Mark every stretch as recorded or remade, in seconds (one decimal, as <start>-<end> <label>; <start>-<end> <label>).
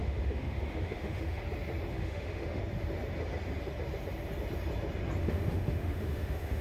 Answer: 0.0-1.4 remade; 1.4-1.9 recorded; 1.9-2.6 remade; 2.6-5.2 recorded; 5.2-6.6 remade